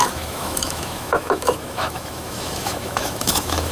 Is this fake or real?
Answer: fake